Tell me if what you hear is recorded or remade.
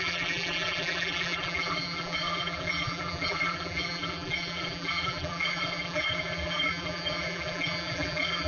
remade